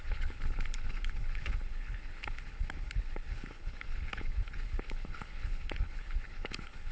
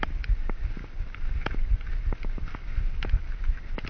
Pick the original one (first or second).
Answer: second